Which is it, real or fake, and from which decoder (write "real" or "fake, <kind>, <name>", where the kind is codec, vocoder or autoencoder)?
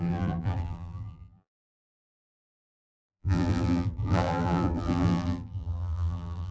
fake, vocoder, BigVGAN v2